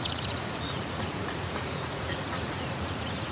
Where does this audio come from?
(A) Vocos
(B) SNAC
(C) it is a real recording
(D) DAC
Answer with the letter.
A